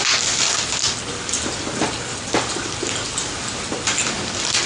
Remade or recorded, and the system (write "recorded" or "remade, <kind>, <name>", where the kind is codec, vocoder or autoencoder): recorded